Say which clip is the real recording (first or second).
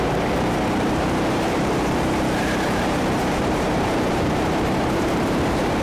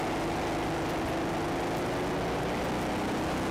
second